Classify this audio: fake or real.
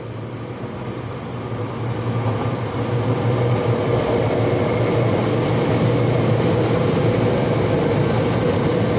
real